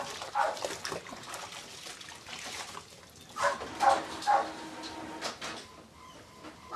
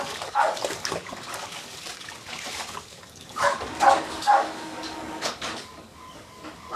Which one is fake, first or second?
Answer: second